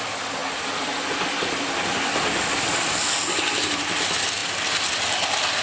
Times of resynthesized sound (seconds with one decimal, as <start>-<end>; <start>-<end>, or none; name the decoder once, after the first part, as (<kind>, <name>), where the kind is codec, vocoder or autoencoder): none